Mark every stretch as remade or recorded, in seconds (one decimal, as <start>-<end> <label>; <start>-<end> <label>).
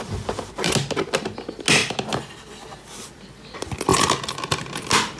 0.0-5.2 recorded